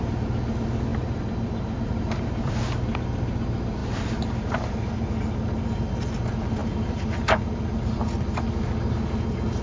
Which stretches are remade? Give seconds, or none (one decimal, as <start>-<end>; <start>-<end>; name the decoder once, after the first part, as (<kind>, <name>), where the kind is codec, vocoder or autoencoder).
0.9-2.5 (vocoder, BigVGAN v2); 3.8-5.0; 6.6-7.6